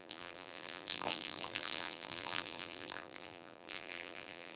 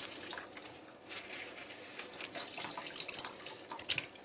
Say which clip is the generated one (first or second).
first